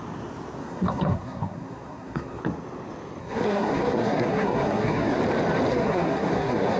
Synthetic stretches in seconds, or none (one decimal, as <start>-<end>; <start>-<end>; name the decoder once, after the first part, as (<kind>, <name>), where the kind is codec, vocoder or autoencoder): 0.6-2.4 (codec, SNAC); 3.2-5.2; 5.7-6.8